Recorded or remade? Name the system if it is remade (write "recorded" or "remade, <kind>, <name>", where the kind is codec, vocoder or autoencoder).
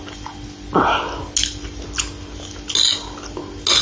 recorded